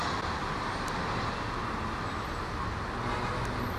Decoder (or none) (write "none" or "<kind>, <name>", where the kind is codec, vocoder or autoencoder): none